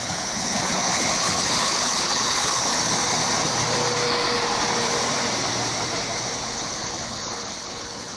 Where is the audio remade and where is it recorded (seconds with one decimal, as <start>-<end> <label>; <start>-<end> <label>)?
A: 0.0-2.7 remade; 2.7-6.4 recorded; 6.4-8.2 remade